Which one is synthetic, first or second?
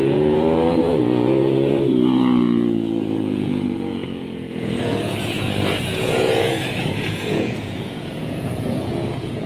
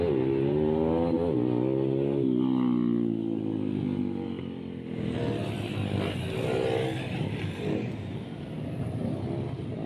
first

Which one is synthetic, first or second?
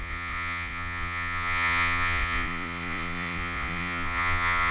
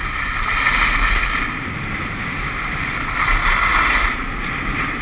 first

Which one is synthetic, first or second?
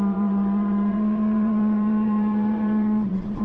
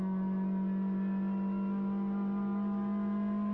first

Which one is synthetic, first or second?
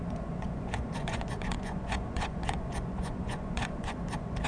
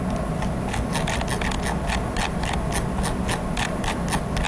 first